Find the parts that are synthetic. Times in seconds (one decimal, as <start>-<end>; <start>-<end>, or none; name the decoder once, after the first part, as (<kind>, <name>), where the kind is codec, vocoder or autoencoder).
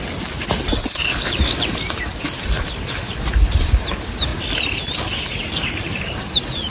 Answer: none